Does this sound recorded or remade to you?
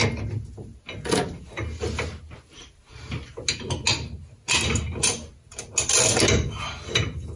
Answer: recorded